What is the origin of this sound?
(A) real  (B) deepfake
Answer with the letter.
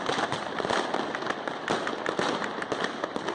A